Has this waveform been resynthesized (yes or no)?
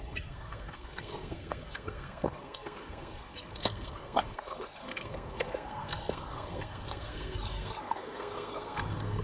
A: yes